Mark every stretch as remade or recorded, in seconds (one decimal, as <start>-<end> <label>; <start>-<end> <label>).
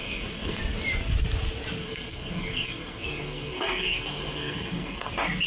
0.0-0.6 remade; 0.6-1.8 recorded; 1.8-5.1 remade; 5.1-5.5 recorded